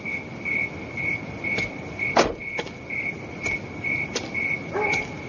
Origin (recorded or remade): recorded